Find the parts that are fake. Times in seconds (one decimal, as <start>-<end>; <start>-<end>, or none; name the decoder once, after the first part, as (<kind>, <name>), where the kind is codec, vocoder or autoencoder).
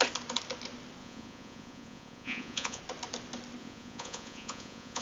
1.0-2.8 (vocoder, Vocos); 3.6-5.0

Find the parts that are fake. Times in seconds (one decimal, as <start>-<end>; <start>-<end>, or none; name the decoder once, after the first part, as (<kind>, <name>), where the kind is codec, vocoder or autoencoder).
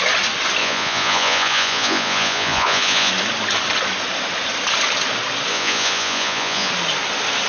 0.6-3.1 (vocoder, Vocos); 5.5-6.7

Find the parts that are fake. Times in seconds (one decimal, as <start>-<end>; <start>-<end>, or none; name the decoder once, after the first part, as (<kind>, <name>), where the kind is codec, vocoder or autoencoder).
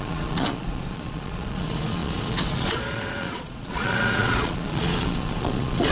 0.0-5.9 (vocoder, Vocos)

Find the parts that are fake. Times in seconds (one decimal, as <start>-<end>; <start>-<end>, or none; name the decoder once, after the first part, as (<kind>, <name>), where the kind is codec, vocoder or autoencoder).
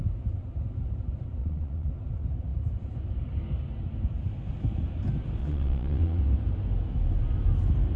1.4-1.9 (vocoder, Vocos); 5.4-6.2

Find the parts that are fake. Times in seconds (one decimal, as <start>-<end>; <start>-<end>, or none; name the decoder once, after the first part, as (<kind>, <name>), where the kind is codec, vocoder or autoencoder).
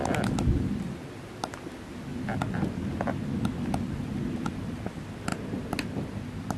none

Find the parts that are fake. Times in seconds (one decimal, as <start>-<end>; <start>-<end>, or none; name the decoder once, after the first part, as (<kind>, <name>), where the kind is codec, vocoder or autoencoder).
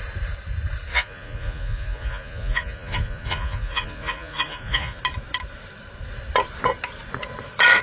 0.9-5.0 (vocoder, Vocos)